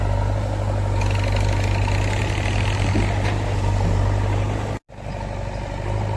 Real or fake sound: real